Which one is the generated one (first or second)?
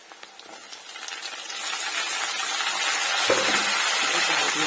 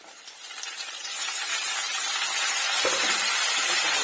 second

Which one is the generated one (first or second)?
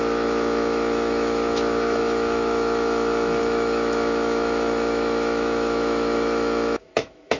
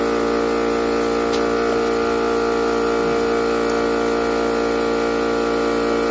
first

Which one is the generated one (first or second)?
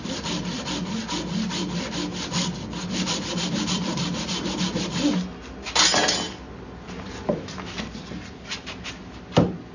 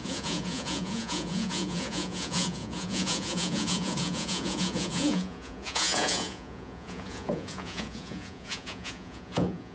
second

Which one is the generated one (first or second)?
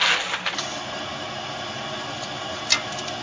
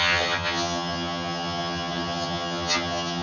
second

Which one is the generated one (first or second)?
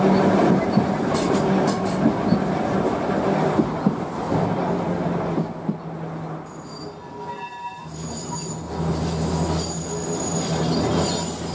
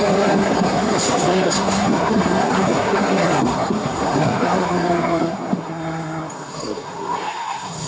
second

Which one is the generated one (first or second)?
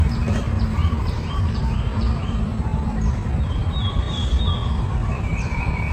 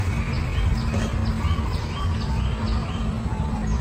first